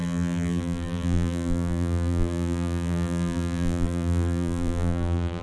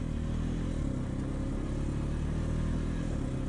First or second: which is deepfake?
first